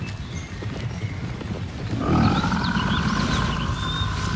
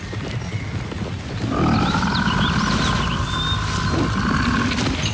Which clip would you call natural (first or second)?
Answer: second